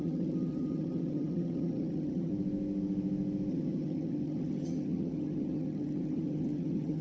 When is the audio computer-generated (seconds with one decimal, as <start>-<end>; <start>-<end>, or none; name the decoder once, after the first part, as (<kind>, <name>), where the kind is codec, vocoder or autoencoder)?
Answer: 0.0-2.3 (vocoder, HiFi-GAN); 3.5-7.0